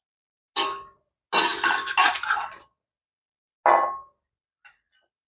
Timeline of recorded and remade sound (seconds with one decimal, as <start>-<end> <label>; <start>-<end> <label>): 0.0-5.3 recorded